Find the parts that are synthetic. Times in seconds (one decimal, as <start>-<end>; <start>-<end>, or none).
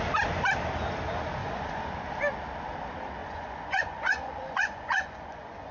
1.4-1.9; 3.2-5.7